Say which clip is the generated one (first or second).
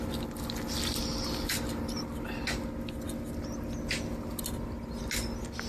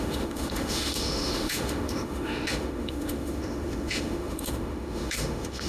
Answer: second